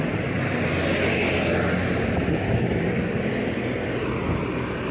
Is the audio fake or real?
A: real